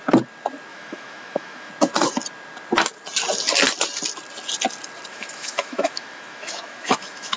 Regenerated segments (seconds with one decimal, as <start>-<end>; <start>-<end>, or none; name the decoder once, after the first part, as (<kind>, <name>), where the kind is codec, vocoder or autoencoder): 0.7-1.7 (autoencoder, DAC-VAE); 5.1-7.4